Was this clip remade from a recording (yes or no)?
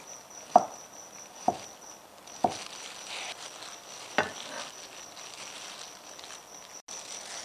no